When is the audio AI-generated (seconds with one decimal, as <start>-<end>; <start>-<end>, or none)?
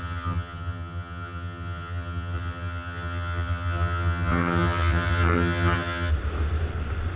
0.0-6.1